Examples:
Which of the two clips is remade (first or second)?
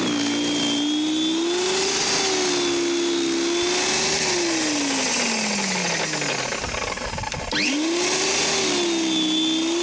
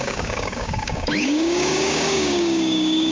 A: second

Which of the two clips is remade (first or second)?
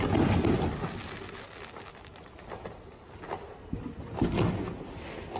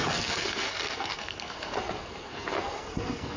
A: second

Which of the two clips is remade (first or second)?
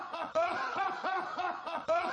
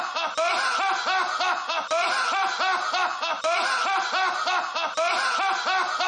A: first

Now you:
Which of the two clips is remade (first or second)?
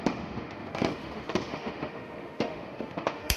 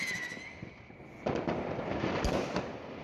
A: first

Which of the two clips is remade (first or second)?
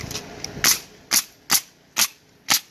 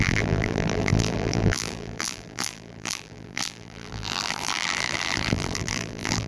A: second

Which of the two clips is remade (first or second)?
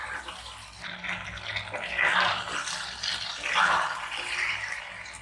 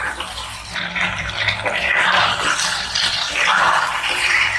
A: second